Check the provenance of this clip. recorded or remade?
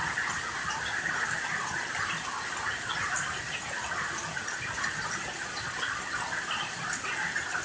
recorded